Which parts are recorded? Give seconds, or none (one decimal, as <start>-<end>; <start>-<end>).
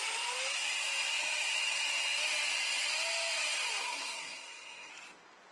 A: 0.0-3.8; 4.9-5.5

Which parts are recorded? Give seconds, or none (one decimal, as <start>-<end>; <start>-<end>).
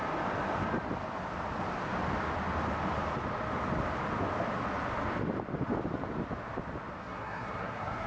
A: 0.0-7.0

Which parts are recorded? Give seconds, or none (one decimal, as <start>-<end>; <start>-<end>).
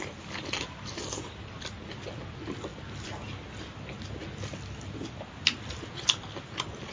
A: 0.0-6.9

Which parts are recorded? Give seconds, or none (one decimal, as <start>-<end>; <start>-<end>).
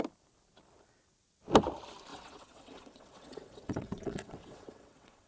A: 0.0-2.1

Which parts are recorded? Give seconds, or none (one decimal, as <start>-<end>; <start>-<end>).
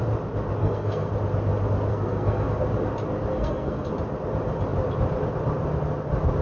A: 0.0-0.6; 1.1-1.9; 2.6-3.3; 3.9-6.4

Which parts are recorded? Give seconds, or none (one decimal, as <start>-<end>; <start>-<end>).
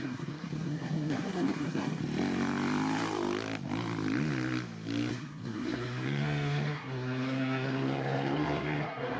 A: 2.0-5.1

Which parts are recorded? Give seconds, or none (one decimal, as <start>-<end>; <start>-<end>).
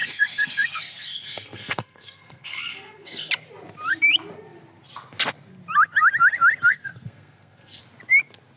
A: 3.3-6.7; 7.8-8.6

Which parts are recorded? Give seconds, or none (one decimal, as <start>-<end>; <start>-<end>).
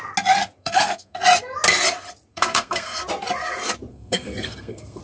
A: 0.0-0.6; 1.2-2.3; 3.0-3.9